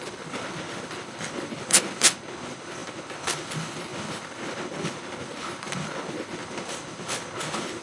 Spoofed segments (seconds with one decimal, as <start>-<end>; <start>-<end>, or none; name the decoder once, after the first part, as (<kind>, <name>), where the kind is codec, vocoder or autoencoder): 0.0-7.8 (codec, HILCodec)